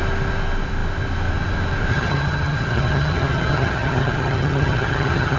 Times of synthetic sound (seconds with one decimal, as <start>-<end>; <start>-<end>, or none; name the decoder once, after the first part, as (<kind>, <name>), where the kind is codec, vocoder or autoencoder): 1.9-5.4 (vocoder, HiFi-GAN)